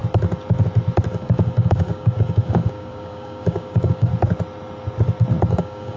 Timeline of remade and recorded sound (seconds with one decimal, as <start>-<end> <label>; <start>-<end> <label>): 0.0-1.1 recorded; 1.1-4.1 remade; 4.1-5.5 recorded; 5.5-6.0 remade